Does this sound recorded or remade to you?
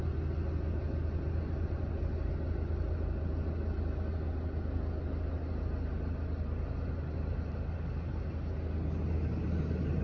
recorded